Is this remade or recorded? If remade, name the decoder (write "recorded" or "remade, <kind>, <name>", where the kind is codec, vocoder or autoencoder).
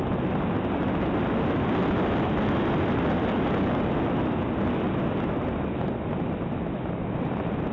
recorded